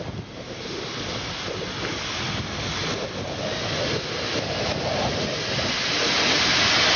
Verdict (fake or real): real